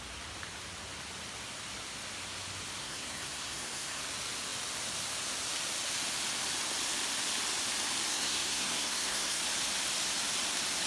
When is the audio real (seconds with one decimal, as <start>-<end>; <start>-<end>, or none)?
0.0-2.8; 4.0-8.1; 9.4-10.9